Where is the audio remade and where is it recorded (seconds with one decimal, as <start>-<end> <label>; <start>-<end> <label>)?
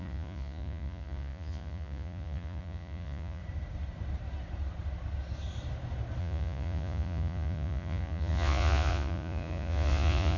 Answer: 0.0-3.4 remade; 3.4-6.2 recorded; 6.2-10.4 remade